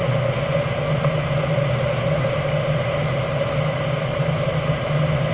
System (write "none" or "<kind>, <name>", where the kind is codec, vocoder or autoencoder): none